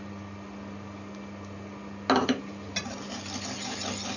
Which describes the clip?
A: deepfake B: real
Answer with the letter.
B